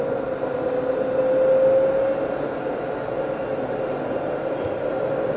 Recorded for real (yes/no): yes